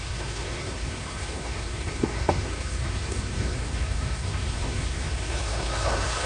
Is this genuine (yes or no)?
no